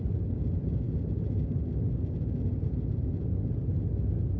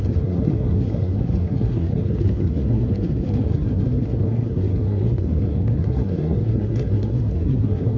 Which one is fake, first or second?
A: second